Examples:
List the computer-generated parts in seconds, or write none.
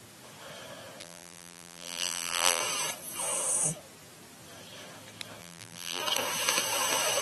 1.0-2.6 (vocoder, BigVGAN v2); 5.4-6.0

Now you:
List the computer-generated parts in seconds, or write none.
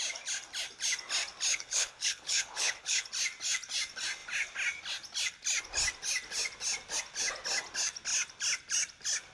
1.5-3.1 (codec, HILCodec)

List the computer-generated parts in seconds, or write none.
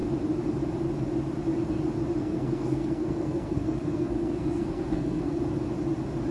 2.2-5.4 (codec, SNAC)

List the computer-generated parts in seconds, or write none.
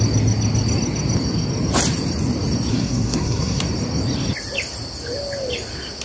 2.7-3.6 (codec, SNAC)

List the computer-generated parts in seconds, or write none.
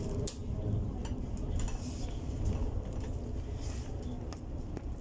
none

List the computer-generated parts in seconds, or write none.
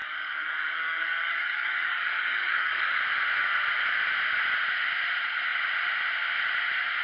0.0-3.0 (codec, DAC)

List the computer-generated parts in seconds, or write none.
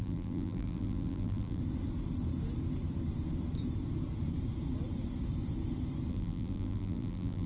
0.0-1.6 (vocoder, BigVGAN v2); 6.1-7.5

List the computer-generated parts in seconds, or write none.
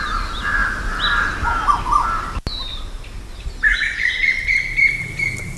3.7-4.3 (vocoder, Vocos)